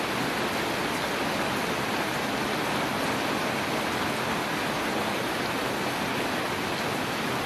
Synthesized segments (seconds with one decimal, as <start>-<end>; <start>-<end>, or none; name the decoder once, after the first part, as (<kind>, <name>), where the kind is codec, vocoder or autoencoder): none